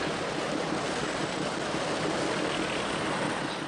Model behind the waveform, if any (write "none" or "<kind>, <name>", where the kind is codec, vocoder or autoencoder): none